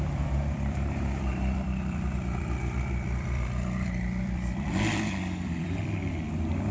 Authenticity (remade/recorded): remade